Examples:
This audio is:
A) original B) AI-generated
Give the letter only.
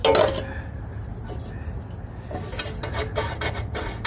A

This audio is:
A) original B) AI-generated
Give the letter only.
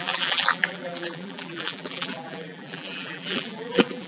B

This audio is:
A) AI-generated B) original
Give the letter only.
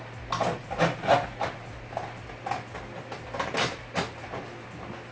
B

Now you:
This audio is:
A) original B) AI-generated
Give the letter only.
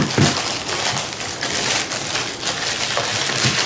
A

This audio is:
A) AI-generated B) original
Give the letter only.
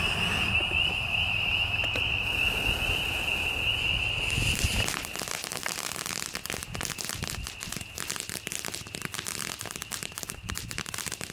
B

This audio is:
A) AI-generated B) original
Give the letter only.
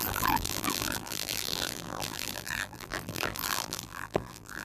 A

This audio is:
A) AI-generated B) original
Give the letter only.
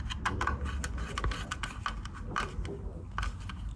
B